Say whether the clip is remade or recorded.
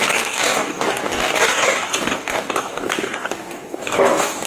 remade